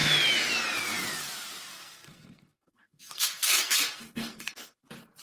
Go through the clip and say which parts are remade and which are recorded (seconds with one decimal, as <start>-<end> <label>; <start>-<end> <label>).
0.0-1.7 recorded; 1.7-4.8 remade; 4.8-5.2 recorded